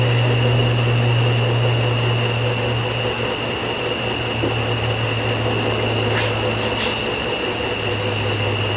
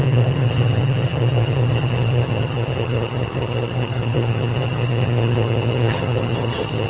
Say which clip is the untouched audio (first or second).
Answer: first